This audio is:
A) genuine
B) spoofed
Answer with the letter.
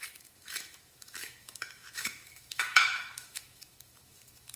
B